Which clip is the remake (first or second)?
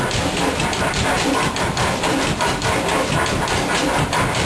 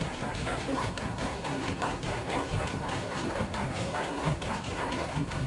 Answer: second